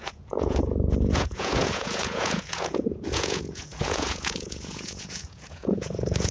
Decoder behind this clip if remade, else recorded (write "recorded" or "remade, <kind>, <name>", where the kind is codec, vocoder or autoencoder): remade, vocoder, Vocos